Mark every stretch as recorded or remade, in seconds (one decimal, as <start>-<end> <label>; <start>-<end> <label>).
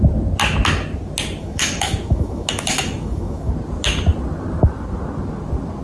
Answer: 0.0-1.4 recorded; 1.4-3.5 remade; 3.5-5.8 recorded